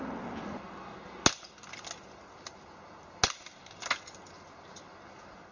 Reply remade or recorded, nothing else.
recorded